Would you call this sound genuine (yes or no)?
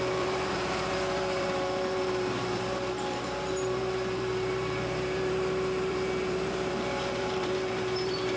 no